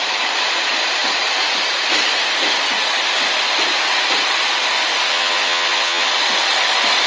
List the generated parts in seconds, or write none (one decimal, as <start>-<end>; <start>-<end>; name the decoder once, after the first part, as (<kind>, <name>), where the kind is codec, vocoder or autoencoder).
5.1-6.1 (vocoder, HiFi-GAN)